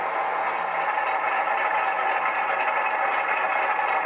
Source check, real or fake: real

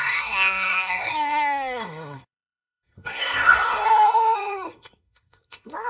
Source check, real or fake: fake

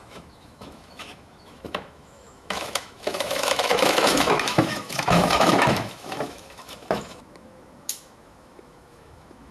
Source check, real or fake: fake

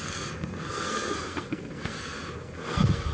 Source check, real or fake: fake